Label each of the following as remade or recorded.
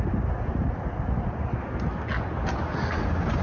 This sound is recorded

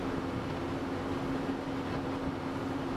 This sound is recorded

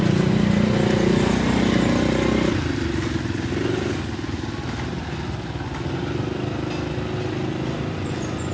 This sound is recorded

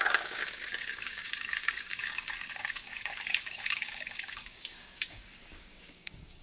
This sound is remade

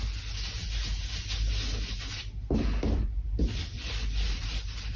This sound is recorded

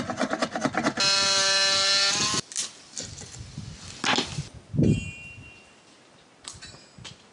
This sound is recorded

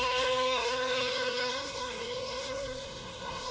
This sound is remade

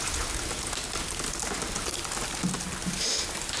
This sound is recorded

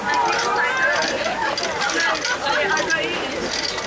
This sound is recorded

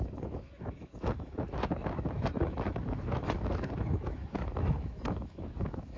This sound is remade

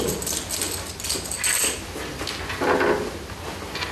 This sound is recorded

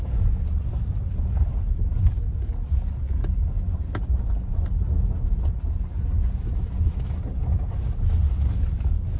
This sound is recorded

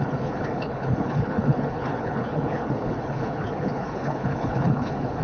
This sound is remade